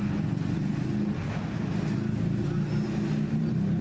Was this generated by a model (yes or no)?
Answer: no